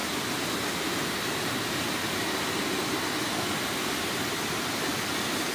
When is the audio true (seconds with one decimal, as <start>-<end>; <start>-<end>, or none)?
0.0-5.5